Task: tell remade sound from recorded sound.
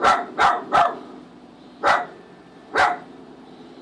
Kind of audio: remade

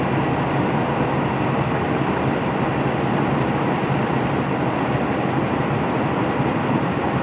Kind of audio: recorded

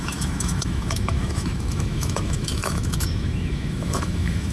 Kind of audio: remade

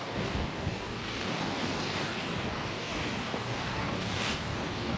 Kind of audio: remade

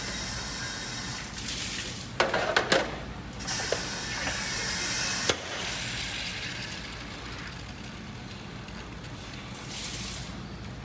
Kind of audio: recorded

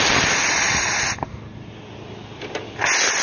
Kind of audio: recorded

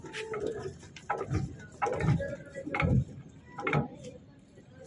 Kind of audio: recorded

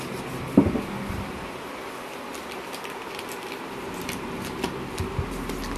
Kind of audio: recorded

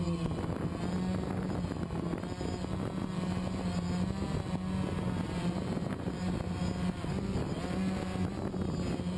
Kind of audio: recorded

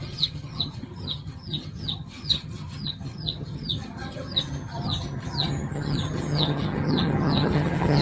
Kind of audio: remade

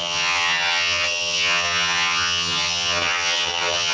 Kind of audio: remade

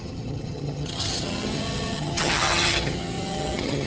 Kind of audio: remade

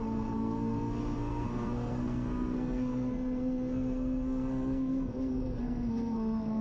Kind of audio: remade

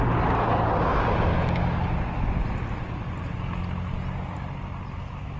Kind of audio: recorded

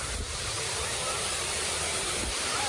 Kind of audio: recorded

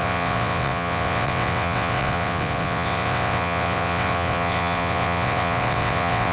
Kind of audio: remade